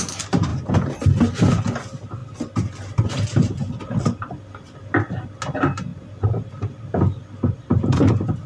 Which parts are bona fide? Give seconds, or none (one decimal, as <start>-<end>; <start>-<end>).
0.0-8.5